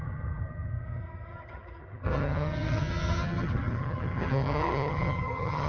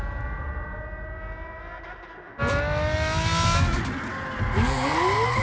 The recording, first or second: second